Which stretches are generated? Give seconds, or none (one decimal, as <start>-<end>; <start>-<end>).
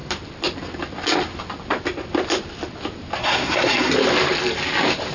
3.2-3.9